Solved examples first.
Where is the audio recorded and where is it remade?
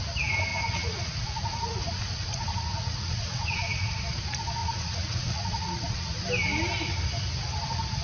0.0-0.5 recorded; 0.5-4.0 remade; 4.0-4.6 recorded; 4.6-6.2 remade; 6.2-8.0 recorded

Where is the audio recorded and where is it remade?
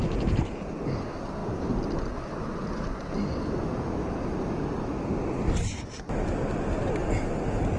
0.0-7.8 recorded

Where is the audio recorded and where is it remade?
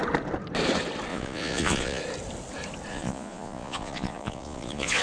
0.0-1.1 recorded; 1.1-2.0 remade; 2.0-2.9 recorded; 2.9-5.0 remade